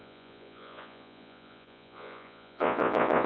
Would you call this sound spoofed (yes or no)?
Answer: yes